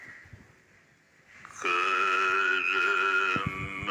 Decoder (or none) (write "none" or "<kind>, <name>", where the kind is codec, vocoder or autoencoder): none